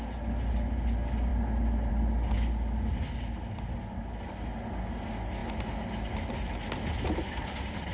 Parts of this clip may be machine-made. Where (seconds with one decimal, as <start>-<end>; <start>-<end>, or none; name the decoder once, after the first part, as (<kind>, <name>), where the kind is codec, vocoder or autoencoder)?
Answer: none